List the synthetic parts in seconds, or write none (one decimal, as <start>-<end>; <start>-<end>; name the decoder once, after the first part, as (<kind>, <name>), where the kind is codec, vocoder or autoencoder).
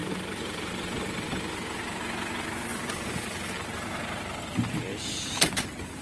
0.0-0.7 (vocoder, BigVGAN v2); 2.7-3.5; 4.9-5.5